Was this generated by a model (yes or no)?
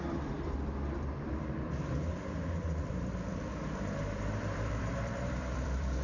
yes